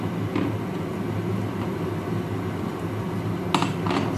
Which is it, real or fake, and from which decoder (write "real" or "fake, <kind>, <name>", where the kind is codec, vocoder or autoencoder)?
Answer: real